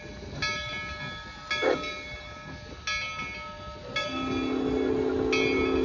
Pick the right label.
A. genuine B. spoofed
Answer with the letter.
A